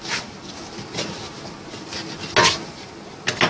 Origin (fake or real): real